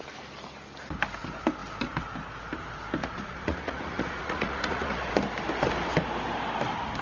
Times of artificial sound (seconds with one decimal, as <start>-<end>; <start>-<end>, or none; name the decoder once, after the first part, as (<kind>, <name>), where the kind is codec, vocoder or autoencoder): 3.0-5.1 (vocoder, Vocos)